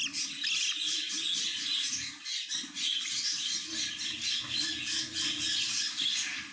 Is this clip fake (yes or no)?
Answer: no